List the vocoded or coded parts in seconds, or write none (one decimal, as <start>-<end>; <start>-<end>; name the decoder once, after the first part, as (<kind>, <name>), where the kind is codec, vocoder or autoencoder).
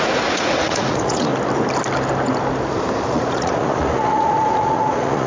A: 0.0-1.3 (vocoder, Vocos); 3.1-5.3